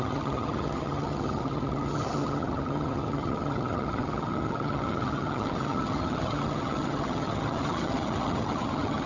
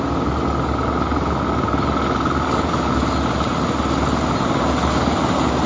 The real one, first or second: second